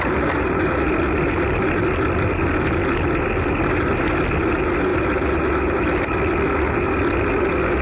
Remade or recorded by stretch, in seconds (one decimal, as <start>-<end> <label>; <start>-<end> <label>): 0.0-7.8 recorded